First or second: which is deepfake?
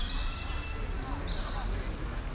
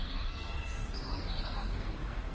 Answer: second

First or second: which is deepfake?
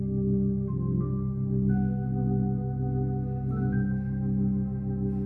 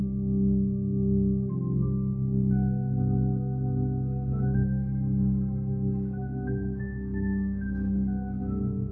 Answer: second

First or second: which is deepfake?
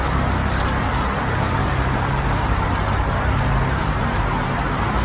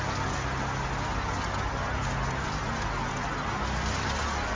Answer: first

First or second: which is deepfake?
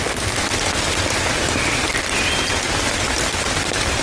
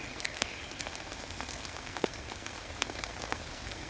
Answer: second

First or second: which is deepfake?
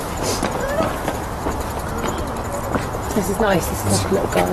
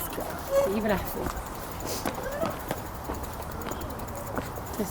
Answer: second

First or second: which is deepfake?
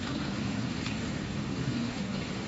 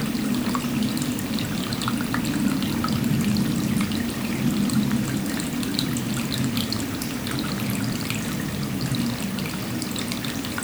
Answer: first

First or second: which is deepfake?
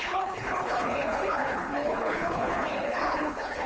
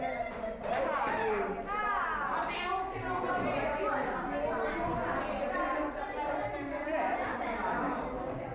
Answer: first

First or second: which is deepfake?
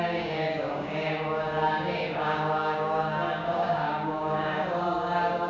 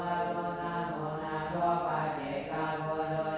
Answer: first